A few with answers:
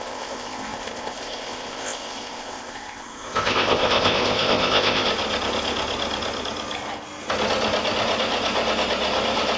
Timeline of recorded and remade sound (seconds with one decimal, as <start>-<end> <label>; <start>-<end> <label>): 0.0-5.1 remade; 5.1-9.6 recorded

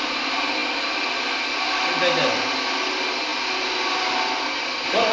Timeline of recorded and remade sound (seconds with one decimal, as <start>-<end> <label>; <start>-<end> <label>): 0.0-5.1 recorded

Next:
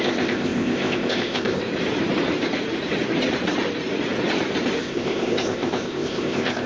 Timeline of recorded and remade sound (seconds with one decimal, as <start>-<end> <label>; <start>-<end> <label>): 0.0-1.6 remade; 1.6-4.8 recorded; 4.8-6.7 remade

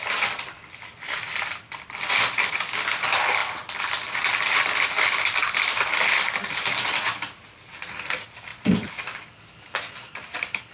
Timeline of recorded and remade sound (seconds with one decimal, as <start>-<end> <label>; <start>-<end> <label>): 0.0-10.7 recorded